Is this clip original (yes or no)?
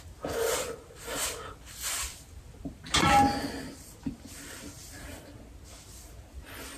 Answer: yes